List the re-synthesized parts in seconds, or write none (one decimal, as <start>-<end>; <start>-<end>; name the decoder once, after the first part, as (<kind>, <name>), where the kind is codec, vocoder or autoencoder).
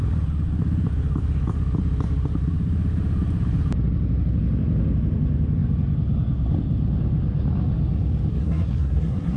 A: 8.3-9.4 (codec, SNAC)